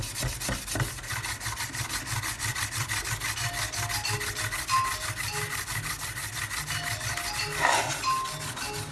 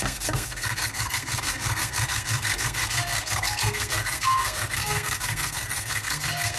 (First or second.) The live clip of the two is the first